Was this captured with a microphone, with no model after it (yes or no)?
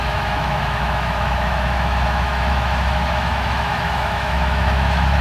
no